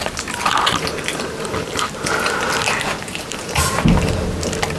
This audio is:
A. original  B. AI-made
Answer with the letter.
A